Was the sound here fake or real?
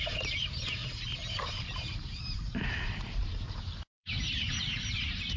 fake